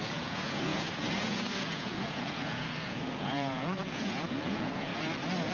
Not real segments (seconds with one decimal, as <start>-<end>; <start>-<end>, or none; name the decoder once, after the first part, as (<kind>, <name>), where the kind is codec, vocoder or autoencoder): 0.0-4.9 (vocoder, Vocos)